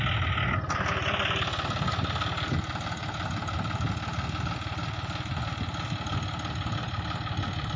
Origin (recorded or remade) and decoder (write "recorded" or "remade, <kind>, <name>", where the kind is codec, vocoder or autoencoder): recorded